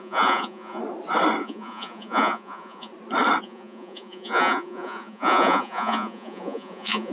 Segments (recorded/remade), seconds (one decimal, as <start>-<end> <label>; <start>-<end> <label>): 0.0-0.8 remade; 0.8-1.4 recorded; 1.4-2.9 remade; 2.9-3.4 recorded; 3.4-7.1 remade